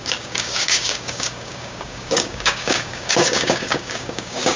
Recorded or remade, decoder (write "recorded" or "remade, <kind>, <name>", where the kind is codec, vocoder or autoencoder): remade, codec, DAC